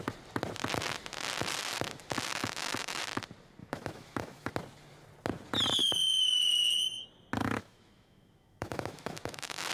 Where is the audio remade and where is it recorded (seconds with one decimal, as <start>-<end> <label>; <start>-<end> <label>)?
0.0-2.3 recorded; 2.3-3.0 remade; 3.0-3.6 recorded; 3.6-4.5 remade; 4.5-5.8 recorded; 5.8-6.4 remade; 6.4-7.4 recorded; 7.4-9.7 remade